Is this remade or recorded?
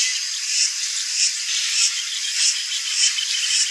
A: recorded